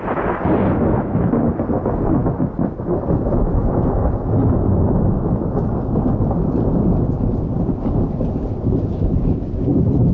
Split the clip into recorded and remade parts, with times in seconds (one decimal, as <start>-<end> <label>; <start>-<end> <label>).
0.0-0.6 remade; 0.6-1.7 recorded; 1.7-10.1 remade